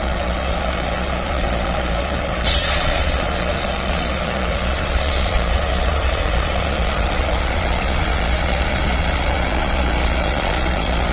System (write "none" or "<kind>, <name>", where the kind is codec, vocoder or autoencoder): vocoder, Vocos